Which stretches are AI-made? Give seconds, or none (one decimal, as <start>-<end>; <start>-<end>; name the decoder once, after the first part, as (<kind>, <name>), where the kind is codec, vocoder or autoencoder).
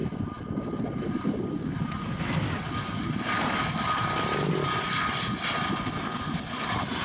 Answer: none